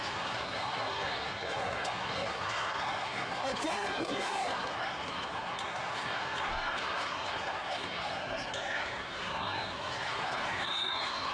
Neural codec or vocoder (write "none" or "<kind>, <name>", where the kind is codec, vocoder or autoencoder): codec, SNAC